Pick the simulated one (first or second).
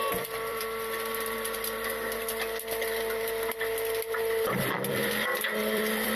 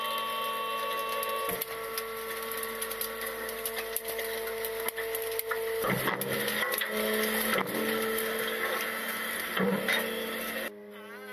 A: first